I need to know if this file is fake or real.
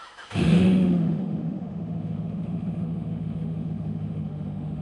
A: fake